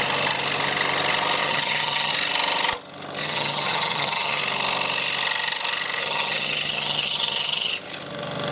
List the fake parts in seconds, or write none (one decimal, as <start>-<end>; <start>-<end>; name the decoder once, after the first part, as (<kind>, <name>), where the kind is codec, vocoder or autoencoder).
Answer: 1.4-2.1 (vocoder, HiFi-GAN); 3.2-4.4; 6.0-7.7